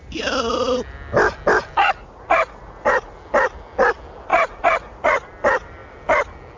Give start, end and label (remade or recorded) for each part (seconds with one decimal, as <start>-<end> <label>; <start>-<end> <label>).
0.0-1.8 recorded; 1.8-3.1 remade; 3.1-4.3 recorded; 4.3-5.3 remade; 5.3-6.6 recorded